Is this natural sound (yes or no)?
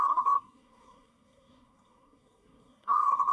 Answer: no